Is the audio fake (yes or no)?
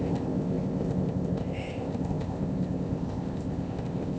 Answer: yes